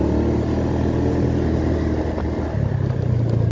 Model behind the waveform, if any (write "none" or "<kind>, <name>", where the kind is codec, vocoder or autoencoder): none